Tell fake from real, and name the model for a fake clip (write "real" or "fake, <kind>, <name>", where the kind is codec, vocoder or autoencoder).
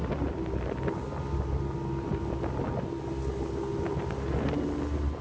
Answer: real